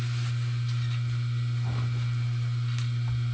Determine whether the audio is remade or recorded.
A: recorded